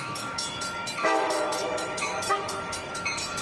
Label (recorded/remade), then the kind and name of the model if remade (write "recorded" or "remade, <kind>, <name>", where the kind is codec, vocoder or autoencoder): remade, autoencoder, DAC-VAE